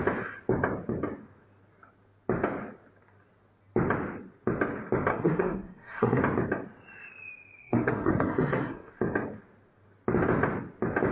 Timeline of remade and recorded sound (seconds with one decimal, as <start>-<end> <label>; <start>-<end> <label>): 0.0-5.1 recorded; 5.1-6.2 remade; 6.2-7.6 recorded; 7.6-8.9 remade; 8.9-11.1 recorded